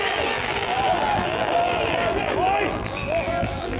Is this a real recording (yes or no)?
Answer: no